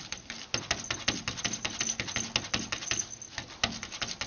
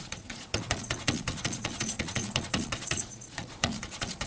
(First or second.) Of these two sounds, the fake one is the second